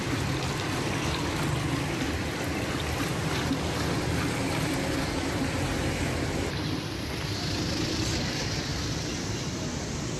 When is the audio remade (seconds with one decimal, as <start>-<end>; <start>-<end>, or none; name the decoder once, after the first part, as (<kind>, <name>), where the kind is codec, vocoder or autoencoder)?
0.0-1.2 (vocoder, BigVGAN v2); 1.8-3.1; 6.6-8.7; 9.5-10.2